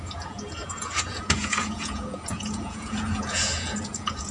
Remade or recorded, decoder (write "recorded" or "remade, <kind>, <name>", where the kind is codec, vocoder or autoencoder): remade, vocoder, Vocos